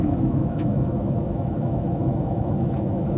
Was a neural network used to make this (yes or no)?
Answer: yes